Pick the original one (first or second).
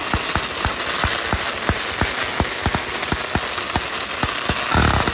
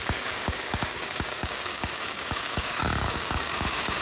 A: first